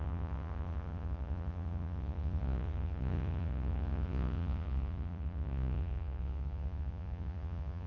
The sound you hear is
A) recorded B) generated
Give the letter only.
B